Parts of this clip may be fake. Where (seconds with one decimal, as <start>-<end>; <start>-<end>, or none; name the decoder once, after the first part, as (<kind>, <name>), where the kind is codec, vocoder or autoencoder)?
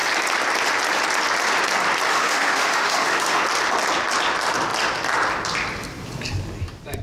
2.1-3.4 (autoencoder, DAC-VAE)